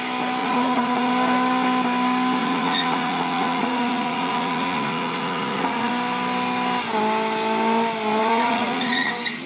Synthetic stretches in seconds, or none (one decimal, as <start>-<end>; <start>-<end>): 0.4-1.1; 2.4-5.9; 8.2-9.1